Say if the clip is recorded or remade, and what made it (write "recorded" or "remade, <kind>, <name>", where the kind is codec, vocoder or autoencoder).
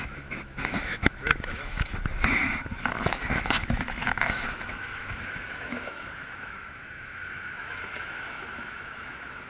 remade, autoencoder, DAC-VAE